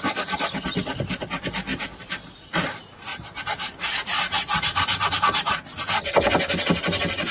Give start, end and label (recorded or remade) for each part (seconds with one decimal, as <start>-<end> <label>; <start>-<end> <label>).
0.0-1.7 recorded; 1.7-2.3 remade; 2.3-3.1 recorded; 3.1-3.8 remade; 3.8-7.3 recorded